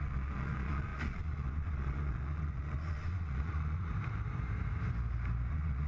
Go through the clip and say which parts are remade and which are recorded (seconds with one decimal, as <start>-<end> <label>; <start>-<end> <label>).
0.0-3.9 remade; 3.9-5.5 recorded; 5.5-5.9 remade